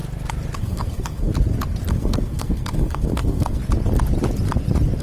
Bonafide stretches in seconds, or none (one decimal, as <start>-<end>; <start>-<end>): 0.0-0.6; 1.3-1.9; 3.6-5.0